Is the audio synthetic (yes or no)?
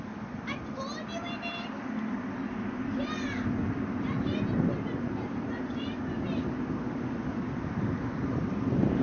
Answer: no